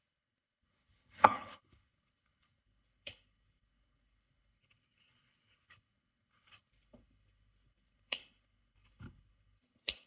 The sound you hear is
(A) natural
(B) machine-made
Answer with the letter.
B